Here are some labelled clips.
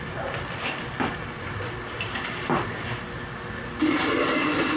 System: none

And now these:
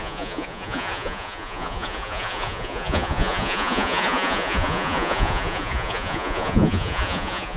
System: vocoder, Vocos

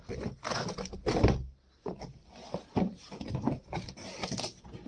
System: none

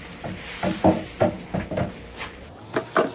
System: none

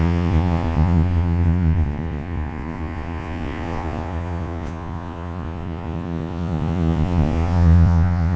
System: vocoder, Vocos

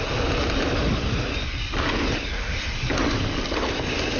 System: none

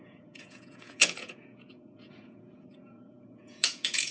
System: vocoder, Vocos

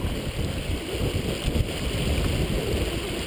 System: none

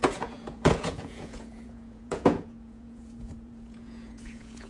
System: vocoder, Vocos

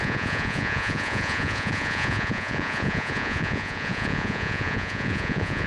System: vocoder, Vocos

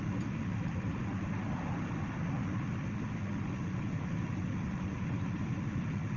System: none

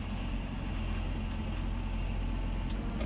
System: none